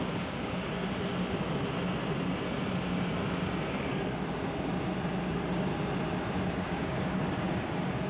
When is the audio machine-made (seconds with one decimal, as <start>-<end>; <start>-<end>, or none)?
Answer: 0.0-1.0; 5.3-5.7; 6.5-8.1